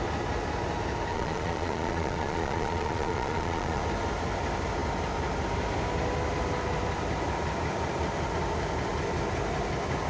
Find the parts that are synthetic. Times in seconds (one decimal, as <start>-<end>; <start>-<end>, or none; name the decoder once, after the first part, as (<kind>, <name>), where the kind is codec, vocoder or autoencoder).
1.1-3.8 (vocoder, Vocos)